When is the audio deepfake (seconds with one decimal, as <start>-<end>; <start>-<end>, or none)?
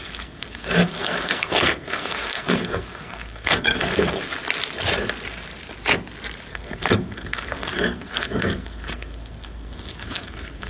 0.0-4.2; 6.5-10.7